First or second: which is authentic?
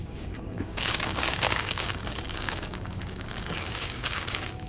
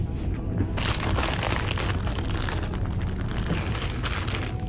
second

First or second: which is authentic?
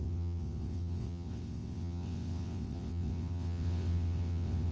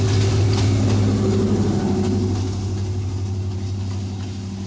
second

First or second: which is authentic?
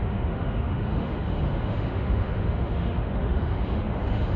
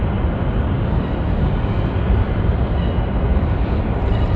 second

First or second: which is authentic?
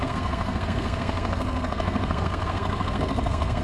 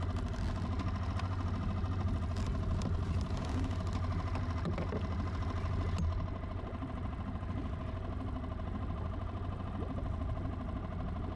second